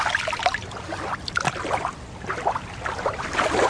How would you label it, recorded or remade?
recorded